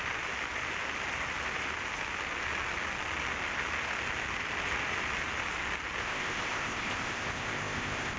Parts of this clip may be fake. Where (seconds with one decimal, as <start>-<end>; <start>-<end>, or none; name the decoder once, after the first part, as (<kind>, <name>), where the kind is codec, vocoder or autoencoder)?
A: 6.0-8.2 (codec, ZipCodec)